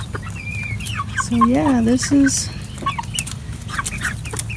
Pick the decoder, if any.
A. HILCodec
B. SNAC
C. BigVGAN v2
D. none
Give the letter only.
D